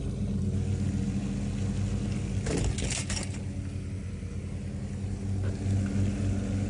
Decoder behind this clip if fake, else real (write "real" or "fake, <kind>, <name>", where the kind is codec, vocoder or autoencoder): real